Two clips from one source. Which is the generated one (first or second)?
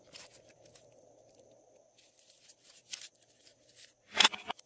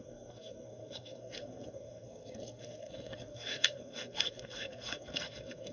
second